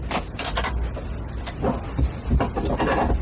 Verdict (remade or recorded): recorded